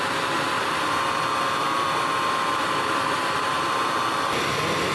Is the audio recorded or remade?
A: recorded